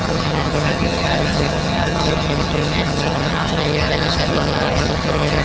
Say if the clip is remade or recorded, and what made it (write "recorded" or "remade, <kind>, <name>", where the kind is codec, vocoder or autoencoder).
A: remade, vocoder, HiFi-GAN